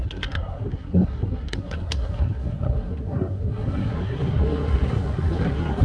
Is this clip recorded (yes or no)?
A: no